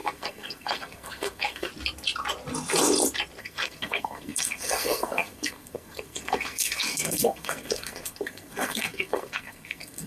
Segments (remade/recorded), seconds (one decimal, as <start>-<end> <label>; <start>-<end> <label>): 0.0-1.7 remade; 1.7-3.4 recorded; 3.4-10.1 remade